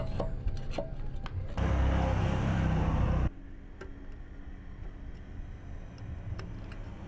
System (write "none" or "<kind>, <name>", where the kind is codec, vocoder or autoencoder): none